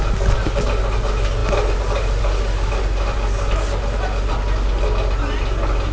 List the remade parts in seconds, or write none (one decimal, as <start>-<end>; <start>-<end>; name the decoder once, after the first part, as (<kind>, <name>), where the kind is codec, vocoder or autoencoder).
none